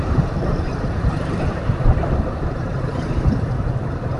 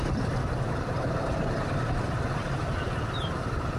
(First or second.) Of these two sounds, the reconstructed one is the first